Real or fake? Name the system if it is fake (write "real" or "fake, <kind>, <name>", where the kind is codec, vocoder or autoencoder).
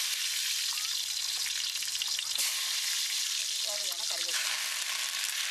real